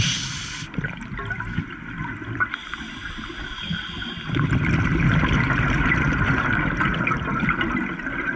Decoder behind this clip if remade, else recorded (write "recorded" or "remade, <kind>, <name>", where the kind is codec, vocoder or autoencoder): recorded